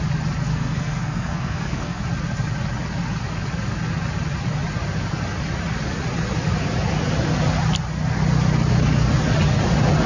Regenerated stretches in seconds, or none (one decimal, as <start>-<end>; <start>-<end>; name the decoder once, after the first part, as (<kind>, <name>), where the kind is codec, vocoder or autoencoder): 0.5-2.0 (codec, SNAC)